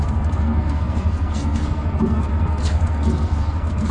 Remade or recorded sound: remade